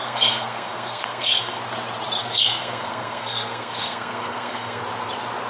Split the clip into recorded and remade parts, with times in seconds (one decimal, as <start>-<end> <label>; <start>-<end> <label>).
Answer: 0.0-1.6 remade; 1.6-2.2 recorded; 2.2-4.8 remade; 4.8-5.5 recorded